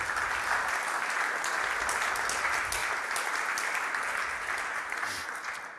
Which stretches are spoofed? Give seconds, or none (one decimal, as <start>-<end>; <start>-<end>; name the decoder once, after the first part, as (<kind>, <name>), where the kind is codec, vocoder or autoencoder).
none

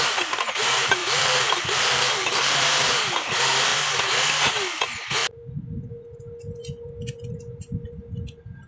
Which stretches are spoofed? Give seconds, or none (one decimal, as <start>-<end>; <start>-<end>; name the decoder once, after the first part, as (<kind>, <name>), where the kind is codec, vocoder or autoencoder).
1.0-2.9 (vocoder, BigVGAN v2); 5.2-5.9